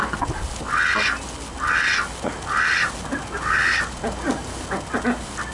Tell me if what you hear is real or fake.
real